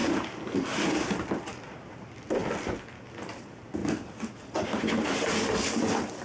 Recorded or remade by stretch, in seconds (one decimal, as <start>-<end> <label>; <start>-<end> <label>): 0.0-2.4 remade; 2.4-3.0 recorded; 3.0-6.2 remade